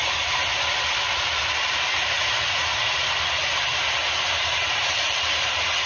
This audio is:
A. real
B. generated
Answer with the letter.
A